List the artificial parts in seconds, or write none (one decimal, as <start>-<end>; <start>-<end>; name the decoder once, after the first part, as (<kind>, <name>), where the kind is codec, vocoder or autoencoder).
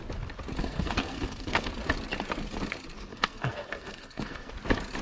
0.6-1.7 (codec, SNAC); 3.1-4.5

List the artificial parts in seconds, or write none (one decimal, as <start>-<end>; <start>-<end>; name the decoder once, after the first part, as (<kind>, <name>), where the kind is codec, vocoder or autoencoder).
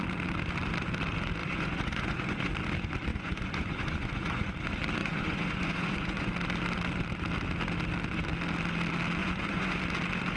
1.4-2.5 (vocoder, Vocos); 3.1-4.5; 5.0-6.3; 9.2-9.8